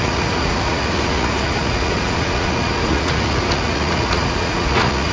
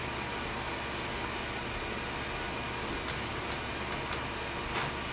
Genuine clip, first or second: second